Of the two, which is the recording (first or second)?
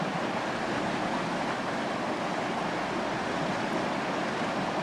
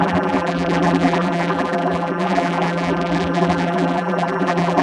first